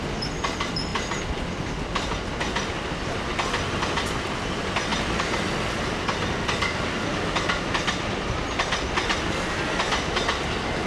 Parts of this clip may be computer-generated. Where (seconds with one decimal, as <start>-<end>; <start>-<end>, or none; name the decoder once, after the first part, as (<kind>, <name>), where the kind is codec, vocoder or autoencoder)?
none